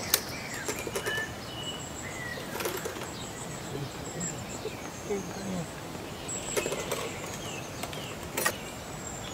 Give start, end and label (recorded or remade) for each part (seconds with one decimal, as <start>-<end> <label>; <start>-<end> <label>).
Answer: 0.0-2.3 recorded; 2.3-3.0 remade; 3.0-9.3 recorded